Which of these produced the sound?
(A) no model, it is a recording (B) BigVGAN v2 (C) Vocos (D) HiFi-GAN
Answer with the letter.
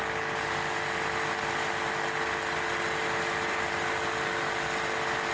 A